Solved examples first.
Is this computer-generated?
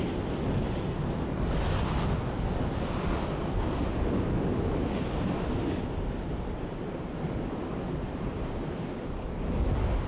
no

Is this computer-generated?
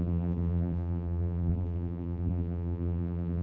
yes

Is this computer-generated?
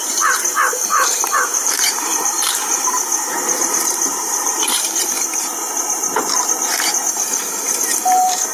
yes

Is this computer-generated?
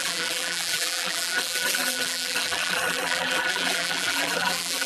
yes